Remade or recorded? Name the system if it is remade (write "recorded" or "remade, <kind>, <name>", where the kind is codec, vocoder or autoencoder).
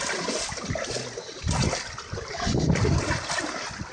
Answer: recorded